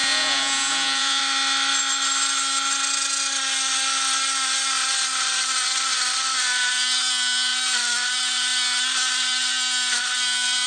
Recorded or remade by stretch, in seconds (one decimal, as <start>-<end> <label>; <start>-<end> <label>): 0.0-1.2 remade; 1.2-10.7 recorded